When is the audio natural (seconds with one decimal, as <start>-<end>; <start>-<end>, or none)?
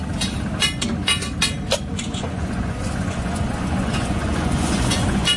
0.0-1.9